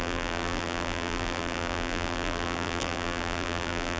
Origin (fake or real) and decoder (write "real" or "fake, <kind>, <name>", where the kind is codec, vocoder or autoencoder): fake, vocoder, BigVGAN v2